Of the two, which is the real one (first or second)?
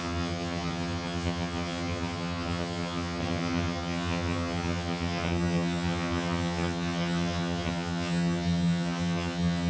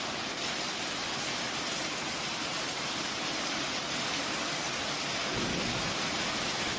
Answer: second